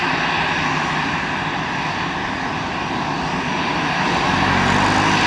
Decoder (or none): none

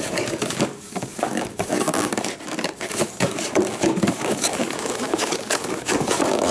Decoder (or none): codec, DAC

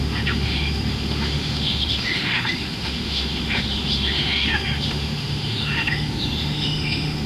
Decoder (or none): autoencoder, DAC-VAE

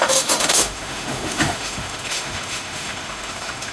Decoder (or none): autoencoder, DAC-VAE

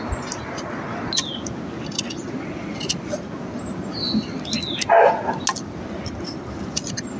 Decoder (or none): none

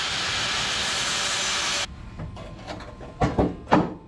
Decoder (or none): none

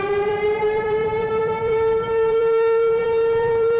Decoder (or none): vocoder, BigVGAN v2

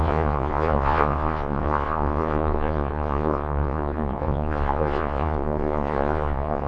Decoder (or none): vocoder, Vocos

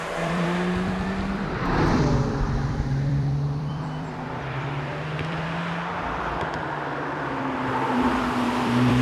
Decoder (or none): vocoder, BigVGAN v2